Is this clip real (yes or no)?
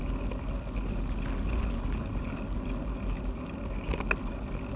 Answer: yes